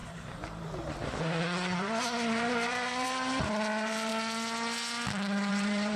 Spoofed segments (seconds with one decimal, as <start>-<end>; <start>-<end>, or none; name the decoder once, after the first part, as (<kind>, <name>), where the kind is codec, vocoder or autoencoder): 0.0-4.1 (vocoder, BigVGAN v2); 5.5-6.0